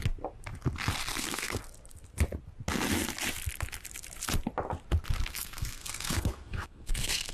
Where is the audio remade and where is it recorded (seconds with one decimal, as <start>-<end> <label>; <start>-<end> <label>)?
0.0-1.2 recorded; 1.2-1.6 remade; 1.6-5.3 recorded; 5.3-7.3 remade